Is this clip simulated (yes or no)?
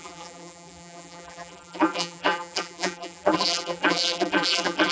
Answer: yes